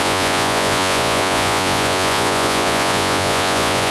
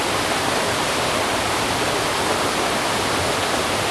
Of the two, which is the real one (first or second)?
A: second